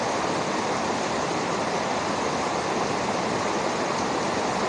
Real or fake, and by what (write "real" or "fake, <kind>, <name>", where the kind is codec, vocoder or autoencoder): fake, vocoder, BigVGAN v2